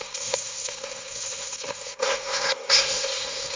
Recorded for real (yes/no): no